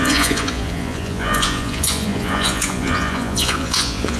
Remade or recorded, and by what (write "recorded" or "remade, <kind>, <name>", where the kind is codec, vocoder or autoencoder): remade, vocoder, Vocos